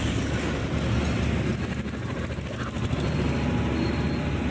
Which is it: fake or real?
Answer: real